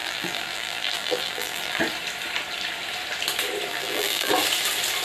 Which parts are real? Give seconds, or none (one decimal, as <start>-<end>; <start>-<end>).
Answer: 1.8-3.7; 4.3-5.0

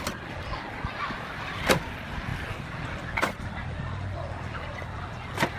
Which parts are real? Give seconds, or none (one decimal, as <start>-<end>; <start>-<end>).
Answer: 0.0-5.6

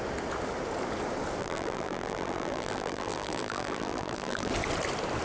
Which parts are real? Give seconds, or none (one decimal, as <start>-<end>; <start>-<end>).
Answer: 0.0-1.4; 4.5-5.2

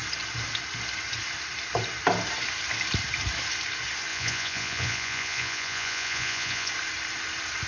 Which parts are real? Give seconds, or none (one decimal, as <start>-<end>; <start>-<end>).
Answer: 0.0-4.1; 6.7-7.7

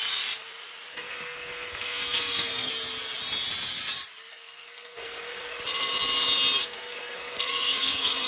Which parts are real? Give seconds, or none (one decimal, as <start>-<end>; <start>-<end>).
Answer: 0.0-0.9; 2.7-4.3; 5.6-6.6

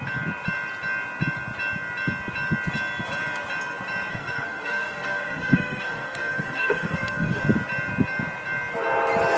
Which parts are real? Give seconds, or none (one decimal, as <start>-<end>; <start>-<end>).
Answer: 0.0-4.1; 7.4-9.4

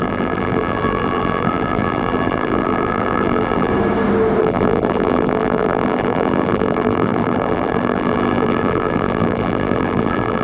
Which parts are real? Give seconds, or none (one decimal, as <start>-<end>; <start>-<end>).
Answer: 3.7-4.4